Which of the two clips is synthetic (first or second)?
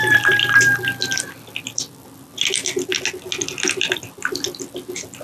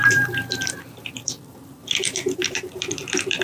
second